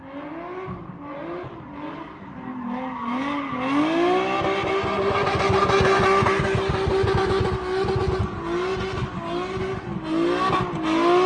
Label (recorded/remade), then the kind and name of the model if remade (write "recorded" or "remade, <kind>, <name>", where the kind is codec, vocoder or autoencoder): recorded